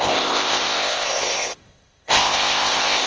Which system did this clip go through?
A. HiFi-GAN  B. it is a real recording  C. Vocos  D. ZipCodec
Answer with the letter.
D